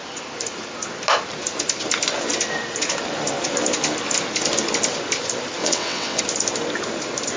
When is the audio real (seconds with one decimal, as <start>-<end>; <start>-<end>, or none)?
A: 0.0-5.6; 6.2-7.4